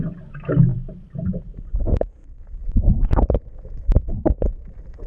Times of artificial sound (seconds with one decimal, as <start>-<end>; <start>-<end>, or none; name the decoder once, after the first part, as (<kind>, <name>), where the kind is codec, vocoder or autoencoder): 0.7-1.4 (vocoder, BigVGAN v2); 2.6-3.9

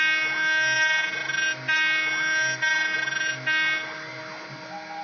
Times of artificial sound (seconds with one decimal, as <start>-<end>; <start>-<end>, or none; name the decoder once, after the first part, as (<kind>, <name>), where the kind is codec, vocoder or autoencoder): none

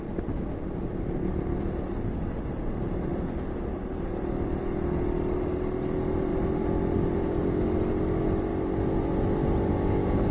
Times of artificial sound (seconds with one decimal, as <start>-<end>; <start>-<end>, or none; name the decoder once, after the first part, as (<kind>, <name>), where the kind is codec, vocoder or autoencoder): none

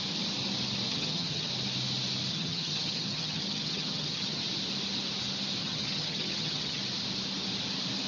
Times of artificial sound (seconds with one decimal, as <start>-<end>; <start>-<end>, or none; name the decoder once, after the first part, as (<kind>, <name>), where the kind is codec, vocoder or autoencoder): 0.9-1.5 (vocoder, HiFi-GAN); 2.3-4.4; 5.6-6.8